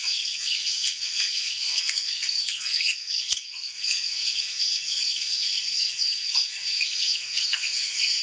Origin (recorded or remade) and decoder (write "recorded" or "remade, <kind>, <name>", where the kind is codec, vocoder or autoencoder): remade, codec, SNAC